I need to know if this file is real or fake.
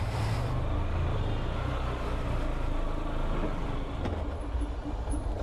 real